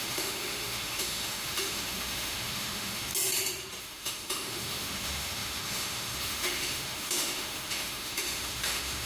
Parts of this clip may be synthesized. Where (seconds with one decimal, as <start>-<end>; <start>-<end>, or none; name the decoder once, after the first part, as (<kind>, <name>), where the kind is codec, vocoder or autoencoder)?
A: 0.0-3.1 (autoencoder, DAC-VAE); 3.8-9.1